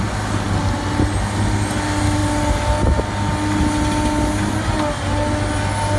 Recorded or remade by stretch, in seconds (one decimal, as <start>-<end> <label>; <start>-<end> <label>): 0.0-6.0 recorded